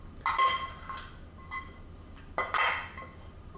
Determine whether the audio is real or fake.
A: real